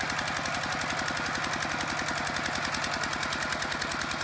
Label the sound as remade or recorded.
recorded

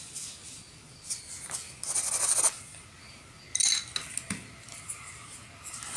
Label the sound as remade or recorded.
recorded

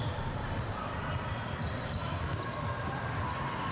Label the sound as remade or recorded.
recorded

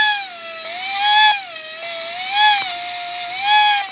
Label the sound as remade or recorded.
recorded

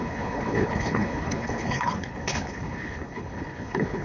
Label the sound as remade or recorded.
remade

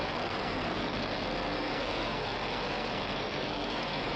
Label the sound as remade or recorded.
remade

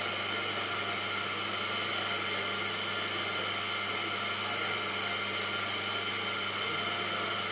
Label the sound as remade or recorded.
recorded